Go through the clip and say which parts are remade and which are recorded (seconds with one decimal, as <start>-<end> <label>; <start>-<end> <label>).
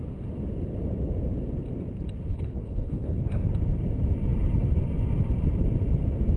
0.0-2.3 recorded; 2.3-3.2 remade; 3.2-6.4 recorded